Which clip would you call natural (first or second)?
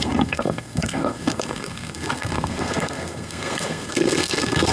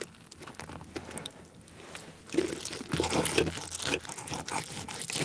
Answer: second